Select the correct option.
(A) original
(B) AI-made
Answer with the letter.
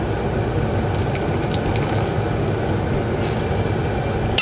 A